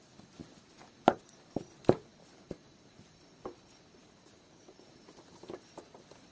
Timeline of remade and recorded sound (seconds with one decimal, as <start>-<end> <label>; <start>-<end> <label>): 0.0-2.1 recorded; 2.1-3.2 remade; 3.2-4.0 recorded; 4.0-5.6 remade; 5.6-6.3 recorded